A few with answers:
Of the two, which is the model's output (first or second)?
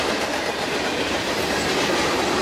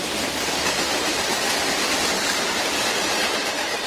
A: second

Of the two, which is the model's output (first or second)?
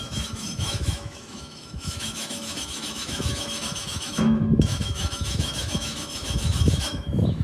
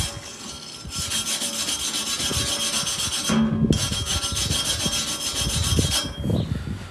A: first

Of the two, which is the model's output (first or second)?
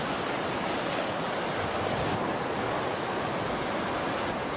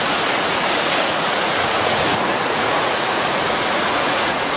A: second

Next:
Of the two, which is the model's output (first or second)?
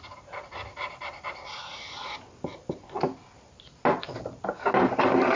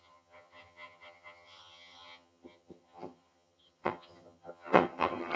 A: second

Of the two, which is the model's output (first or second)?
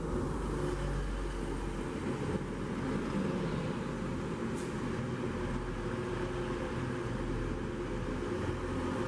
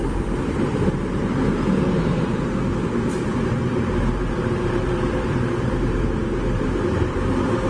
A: second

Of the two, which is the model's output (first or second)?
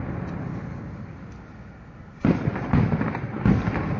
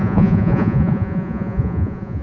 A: second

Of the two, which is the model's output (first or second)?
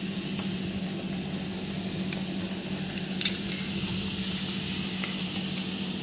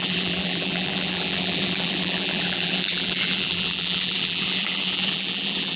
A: second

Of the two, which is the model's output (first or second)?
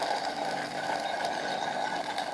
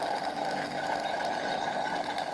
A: second